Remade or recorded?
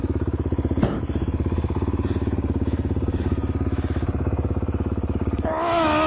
recorded